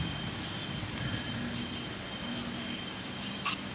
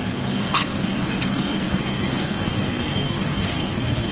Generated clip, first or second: second